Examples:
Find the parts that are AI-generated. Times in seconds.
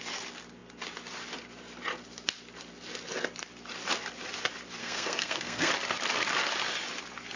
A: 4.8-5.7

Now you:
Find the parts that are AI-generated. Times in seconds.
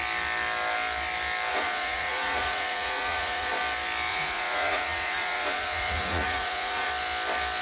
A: 1.5-3.5; 4.1-6.9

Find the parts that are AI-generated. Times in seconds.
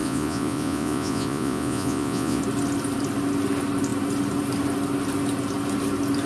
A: 0.0-2.4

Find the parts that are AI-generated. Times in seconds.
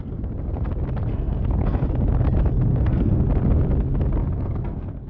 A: 0.0-0.7; 1.1-1.9; 2.7-3.2; 4.2-5.1